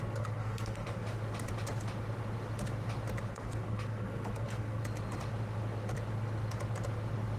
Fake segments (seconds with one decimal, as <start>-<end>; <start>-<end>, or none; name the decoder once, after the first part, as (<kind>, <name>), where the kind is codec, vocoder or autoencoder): 0.0-1.0 (codec, SNAC); 3.3-4.8